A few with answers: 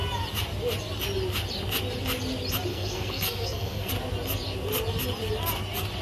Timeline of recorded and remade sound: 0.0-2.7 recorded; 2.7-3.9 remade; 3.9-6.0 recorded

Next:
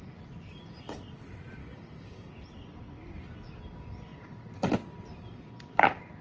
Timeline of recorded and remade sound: 0.0-1.6 recorded; 1.6-2.3 remade; 2.3-6.2 recorded

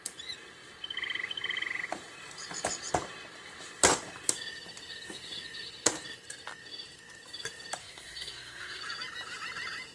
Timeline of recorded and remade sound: 0.0-7.8 recorded; 7.8-8.8 remade; 8.8-9.9 recorded

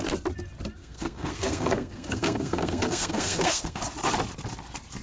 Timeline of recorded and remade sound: 0.0-0.8 recorded; 0.8-3.8 remade; 3.8-5.0 recorded

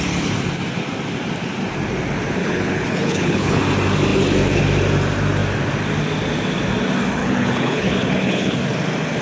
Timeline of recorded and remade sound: 0.0-2.4 recorded; 2.4-3.6 remade; 3.6-7.2 recorded; 7.2-8.6 remade; 8.6-9.2 recorded

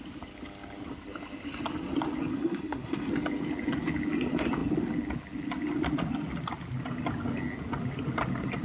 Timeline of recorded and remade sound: 0.0-2.3 recorded; 2.3-3.1 remade; 3.1-8.6 recorded

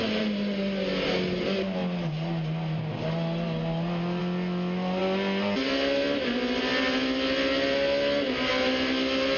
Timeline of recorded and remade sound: 0.0-9.4 recorded